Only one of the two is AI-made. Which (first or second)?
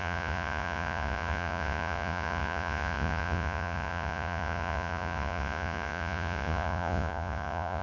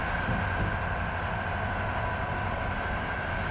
first